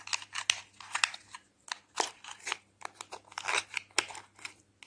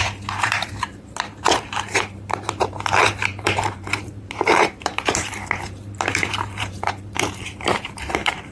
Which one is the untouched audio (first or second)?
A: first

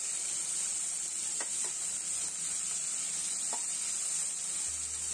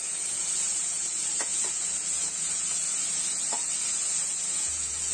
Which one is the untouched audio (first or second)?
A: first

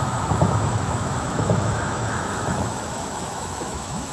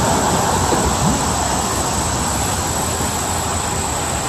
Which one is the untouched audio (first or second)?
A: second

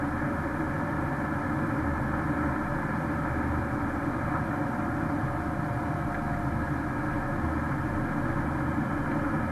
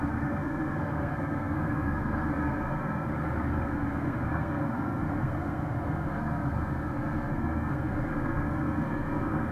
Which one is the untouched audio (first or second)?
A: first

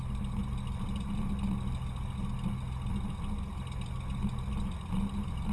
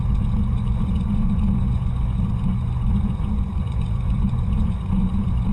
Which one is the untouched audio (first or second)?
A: first